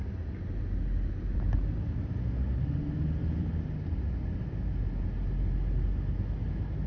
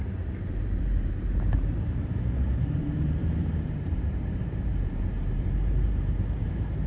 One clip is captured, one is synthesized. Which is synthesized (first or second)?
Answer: second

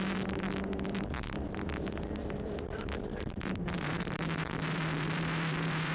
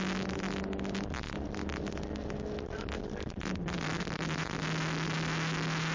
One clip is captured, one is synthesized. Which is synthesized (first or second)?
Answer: first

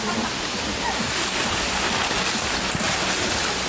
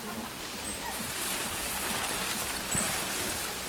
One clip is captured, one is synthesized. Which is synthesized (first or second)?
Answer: second